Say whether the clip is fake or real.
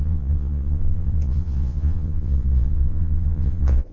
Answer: fake